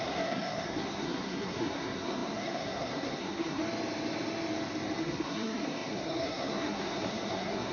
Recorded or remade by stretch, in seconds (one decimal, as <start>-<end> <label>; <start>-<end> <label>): 0.0-3.6 remade; 3.6-5.0 recorded; 5.0-7.7 remade